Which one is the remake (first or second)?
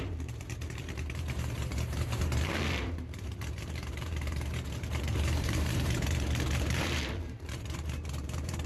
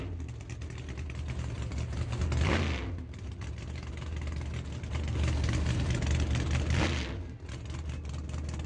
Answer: first